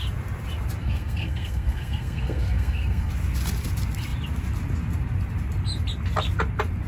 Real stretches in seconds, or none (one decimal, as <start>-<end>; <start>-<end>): 0.0-0.8; 3.1-6.9